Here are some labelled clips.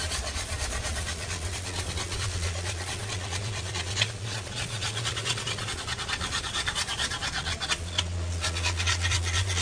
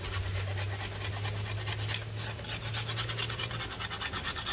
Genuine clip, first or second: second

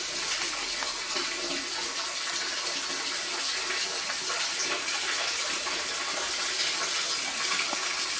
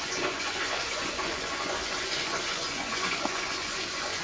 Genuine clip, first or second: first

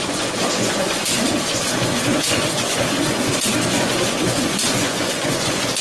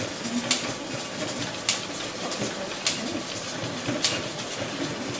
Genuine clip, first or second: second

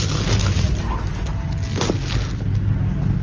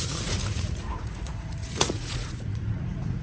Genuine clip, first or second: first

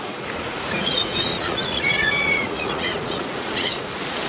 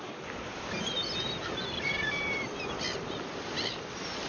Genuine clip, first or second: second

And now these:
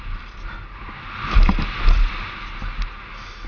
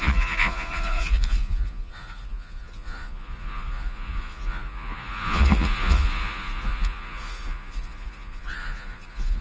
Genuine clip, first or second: first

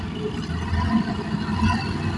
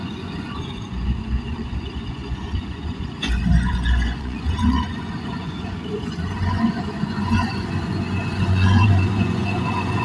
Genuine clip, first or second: first